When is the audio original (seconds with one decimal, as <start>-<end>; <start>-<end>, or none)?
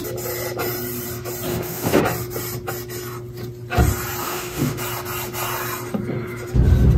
0.0-1.5; 2.0-4.2; 4.8-7.0